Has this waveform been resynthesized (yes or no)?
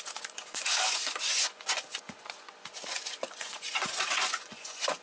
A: yes